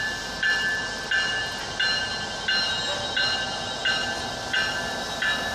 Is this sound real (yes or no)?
yes